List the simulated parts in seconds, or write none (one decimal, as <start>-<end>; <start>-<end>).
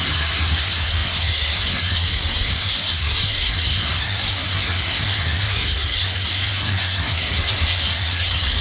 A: 0.0-8.6